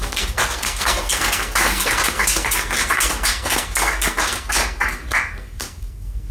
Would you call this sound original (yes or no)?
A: no